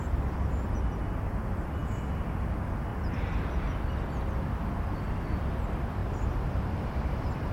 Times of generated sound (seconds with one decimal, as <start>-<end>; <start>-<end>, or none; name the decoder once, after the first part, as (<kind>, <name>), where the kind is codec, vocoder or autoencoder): 2.9-4.1 (vocoder, BigVGAN v2); 6.0-7.1